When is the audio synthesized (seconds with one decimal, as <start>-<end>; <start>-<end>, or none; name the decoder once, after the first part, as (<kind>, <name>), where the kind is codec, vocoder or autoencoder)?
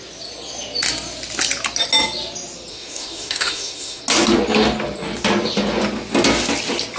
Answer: 2.7-4.0 (autoencoder, DAC-VAE)